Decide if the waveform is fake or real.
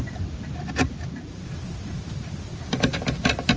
real